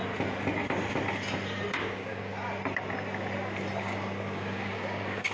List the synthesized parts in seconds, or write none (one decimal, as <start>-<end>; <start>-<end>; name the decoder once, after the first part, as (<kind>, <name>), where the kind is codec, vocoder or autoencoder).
1.7-2.3 (codec, DAC); 3.8-5.3